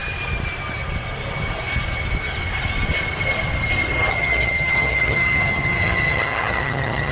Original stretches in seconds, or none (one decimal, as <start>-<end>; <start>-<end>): 0.0-4.1